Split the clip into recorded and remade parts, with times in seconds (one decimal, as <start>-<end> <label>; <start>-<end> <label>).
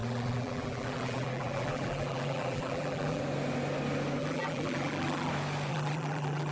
0.0-3.2 remade; 3.2-4.2 recorded; 4.2-5.3 remade; 5.3-5.7 recorded; 5.7-6.5 remade